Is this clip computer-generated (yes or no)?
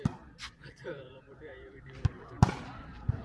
yes